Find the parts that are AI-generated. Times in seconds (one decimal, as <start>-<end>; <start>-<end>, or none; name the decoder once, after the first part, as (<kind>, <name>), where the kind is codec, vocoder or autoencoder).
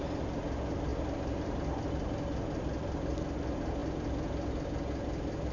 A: none